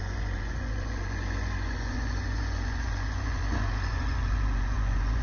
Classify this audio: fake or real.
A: fake